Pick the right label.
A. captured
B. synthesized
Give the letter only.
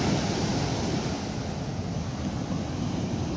A